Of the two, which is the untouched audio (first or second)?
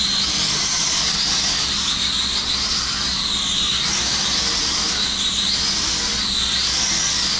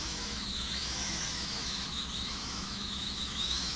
first